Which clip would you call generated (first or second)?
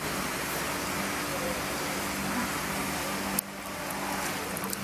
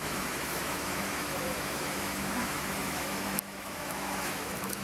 second